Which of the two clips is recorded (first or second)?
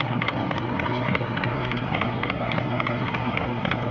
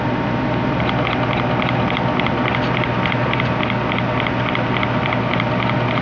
second